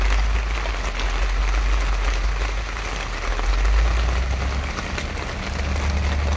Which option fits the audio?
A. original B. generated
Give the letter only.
A